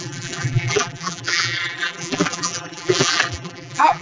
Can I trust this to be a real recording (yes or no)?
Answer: no